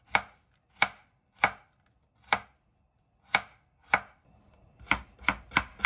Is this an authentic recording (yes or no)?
yes